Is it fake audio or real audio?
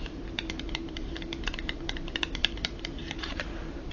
fake